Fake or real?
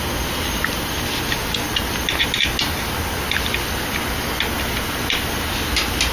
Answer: real